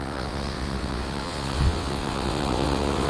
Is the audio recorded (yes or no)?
no